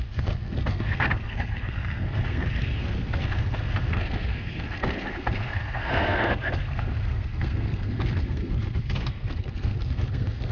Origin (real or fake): fake